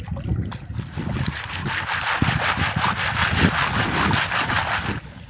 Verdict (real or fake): real